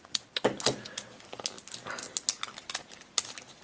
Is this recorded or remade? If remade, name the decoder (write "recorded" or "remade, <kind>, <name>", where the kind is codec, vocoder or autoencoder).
recorded